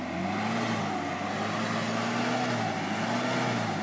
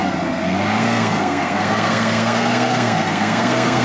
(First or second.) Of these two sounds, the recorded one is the first